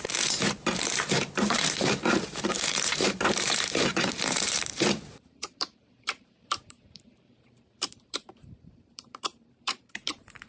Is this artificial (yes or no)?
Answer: yes